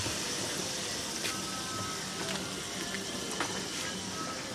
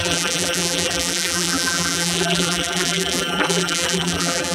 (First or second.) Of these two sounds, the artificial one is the second